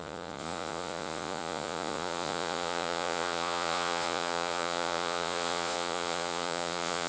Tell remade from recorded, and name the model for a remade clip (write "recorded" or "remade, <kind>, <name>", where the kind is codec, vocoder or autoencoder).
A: remade, vocoder, Vocos